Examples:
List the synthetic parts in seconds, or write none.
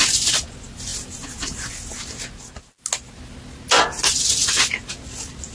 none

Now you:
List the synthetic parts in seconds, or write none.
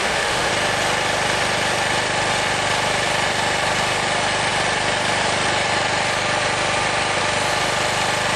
0.0-0.5 (autoencoder, DAC-VAE)